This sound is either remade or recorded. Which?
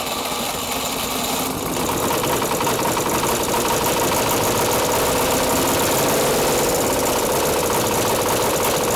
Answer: recorded